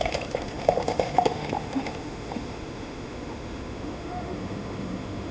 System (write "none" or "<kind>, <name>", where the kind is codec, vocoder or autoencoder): autoencoder, DAC-VAE